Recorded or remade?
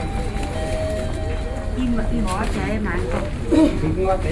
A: recorded